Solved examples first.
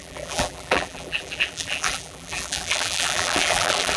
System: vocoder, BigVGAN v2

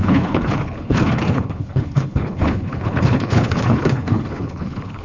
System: codec, HILCodec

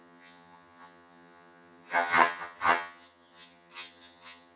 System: vocoder, HiFi-GAN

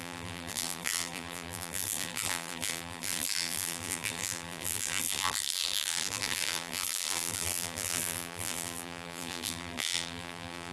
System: vocoder, BigVGAN v2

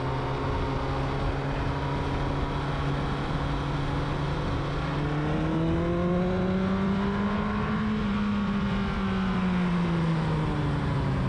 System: none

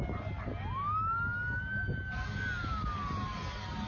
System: none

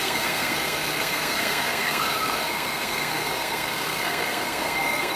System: codec, SNAC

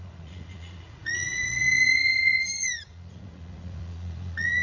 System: vocoder, Vocos